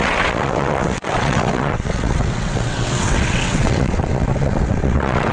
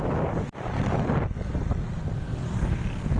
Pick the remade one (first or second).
first